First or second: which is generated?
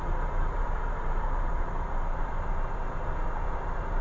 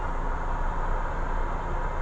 first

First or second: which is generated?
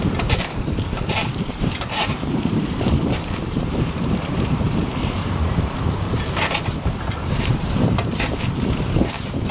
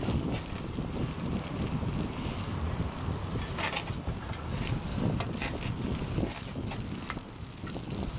first